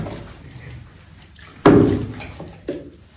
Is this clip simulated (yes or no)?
no